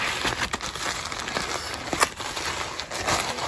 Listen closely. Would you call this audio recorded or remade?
recorded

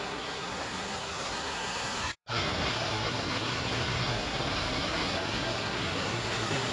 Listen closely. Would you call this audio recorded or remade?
remade